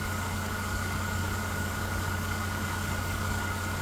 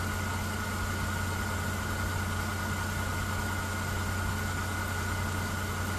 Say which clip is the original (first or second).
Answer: second